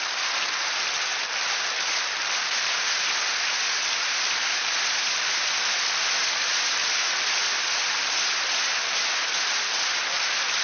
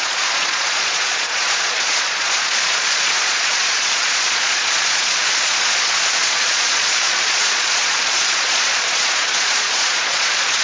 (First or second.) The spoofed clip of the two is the second